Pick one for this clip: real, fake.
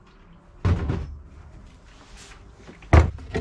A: real